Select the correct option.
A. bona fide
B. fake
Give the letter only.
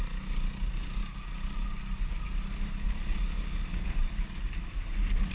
A